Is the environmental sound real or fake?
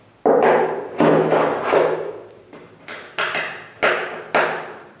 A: real